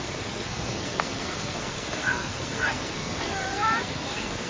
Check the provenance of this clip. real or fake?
fake